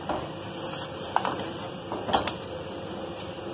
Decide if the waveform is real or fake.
real